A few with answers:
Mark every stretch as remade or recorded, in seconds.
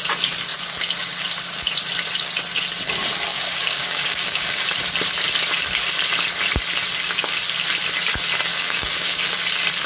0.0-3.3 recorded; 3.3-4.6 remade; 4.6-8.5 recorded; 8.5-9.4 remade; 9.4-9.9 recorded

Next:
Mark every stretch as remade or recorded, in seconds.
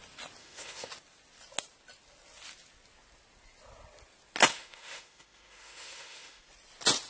0.0-0.4 recorded; 0.4-0.9 remade; 0.9-4.5 recorded; 4.5-6.5 remade; 6.5-7.1 recorded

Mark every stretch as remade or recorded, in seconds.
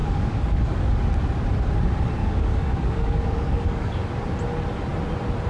0.0-1.0 remade; 1.0-2.2 recorded; 2.2-4.1 remade; 4.1-5.5 recorded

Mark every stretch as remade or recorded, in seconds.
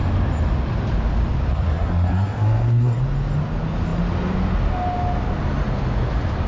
0.0-1.5 recorded; 1.5-3.0 remade; 3.0-6.5 recorded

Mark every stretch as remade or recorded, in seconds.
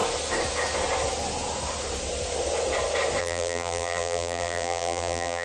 0.0-3.2 recorded; 3.2-5.4 remade